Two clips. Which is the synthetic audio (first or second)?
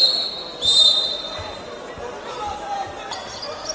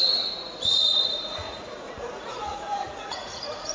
second